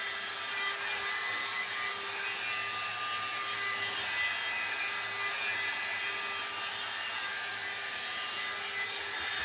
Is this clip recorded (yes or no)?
yes